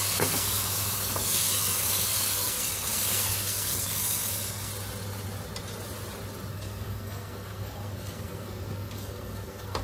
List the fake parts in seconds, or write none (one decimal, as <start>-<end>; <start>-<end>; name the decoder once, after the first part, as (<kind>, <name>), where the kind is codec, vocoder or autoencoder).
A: 0.0-4.7 (codec, SNAC); 6.5-9.8